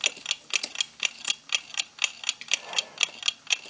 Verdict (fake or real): real